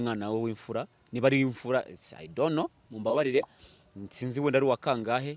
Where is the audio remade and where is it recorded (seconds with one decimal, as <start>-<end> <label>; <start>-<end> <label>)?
0.0-3.1 recorded; 3.1-3.6 remade; 3.6-5.4 recorded